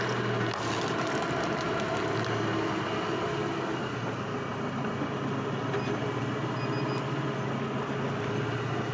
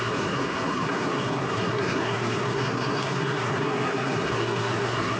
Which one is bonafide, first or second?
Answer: first